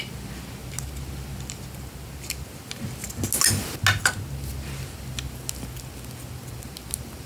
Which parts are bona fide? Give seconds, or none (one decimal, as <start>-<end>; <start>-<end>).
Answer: 0.0-7.3